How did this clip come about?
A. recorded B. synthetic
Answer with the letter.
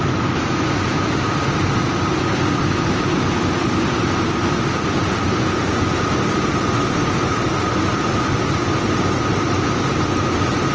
A